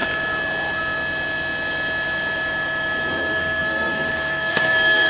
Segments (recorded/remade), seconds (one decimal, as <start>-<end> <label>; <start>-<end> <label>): 0.0-3.1 recorded; 3.1-5.1 remade